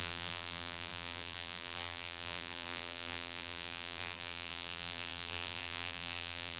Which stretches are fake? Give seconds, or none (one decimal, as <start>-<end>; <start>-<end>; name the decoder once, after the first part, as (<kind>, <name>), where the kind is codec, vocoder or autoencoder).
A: 0.0-6.6 (vocoder, BigVGAN v2)